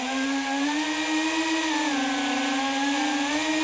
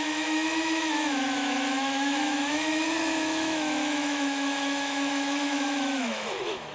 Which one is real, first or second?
first